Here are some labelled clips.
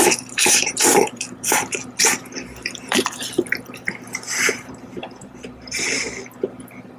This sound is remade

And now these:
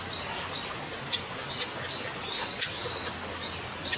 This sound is recorded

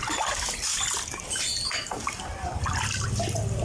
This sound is recorded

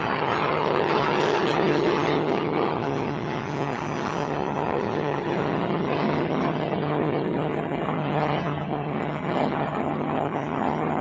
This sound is remade